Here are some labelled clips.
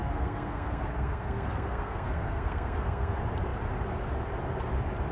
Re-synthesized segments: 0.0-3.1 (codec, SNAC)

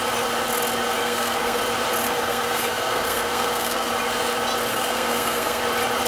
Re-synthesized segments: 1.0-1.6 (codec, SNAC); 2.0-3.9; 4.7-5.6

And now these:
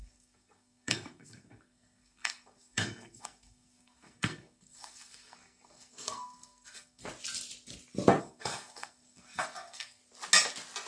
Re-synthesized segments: 0.0-7.0 (codec, SNAC); 8.2-10.0

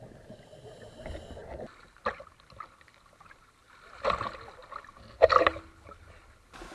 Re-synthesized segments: none

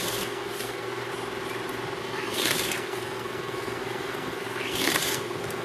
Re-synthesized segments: 0.0-1.1 (codec, SNAC); 2.0-5.6

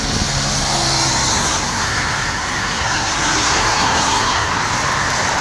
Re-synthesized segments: 1.3-4.5 (codec, SNAC)